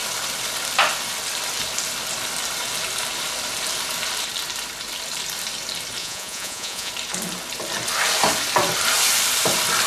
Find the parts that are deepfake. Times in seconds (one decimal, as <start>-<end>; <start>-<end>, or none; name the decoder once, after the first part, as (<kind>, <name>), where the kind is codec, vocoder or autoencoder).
6.0-6.9 (vocoder, Vocos)

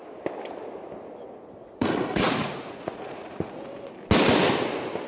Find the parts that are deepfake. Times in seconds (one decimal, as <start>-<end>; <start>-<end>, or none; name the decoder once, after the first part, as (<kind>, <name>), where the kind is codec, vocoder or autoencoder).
1.6-3.9 (vocoder, Vocos)

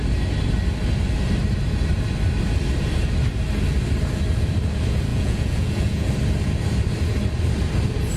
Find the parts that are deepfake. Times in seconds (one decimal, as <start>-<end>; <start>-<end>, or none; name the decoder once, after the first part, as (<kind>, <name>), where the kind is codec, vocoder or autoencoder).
5.1-6.1 (vocoder, Vocos)

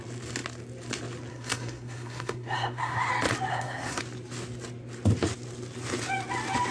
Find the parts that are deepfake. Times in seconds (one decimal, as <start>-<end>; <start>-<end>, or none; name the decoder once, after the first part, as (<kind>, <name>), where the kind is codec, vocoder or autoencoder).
1.3-3.1 (codec, SNAC); 3.5-4.0

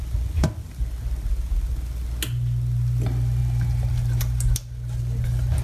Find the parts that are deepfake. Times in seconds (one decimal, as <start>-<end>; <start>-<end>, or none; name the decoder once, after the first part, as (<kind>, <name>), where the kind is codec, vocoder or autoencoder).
none

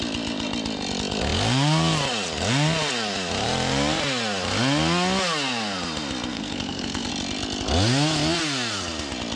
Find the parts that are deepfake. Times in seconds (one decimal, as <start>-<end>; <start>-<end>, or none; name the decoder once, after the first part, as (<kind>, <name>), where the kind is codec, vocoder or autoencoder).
6.3-7.1 (codec, SNAC)

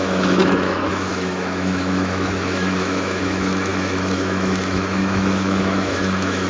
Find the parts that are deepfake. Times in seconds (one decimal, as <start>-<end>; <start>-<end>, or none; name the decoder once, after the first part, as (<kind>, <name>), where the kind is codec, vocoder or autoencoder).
0.0-6.5 (autoencoder, DAC-VAE)

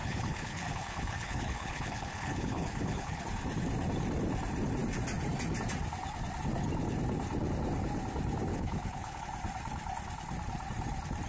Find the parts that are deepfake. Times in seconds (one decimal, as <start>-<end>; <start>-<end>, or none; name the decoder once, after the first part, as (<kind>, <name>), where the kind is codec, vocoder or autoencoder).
0.0-3.2 (codec, HILCodec); 8.5-9.2